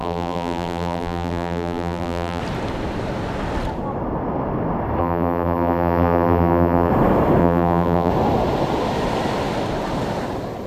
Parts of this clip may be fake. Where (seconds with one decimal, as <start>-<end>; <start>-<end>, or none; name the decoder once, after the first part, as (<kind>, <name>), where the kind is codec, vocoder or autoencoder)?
0.0-2.4 (vocoder, BigVGAN v2); 5.0-6.9; 7.4-8.1